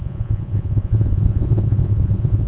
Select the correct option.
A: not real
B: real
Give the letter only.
A